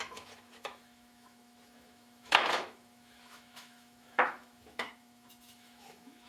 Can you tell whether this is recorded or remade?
remade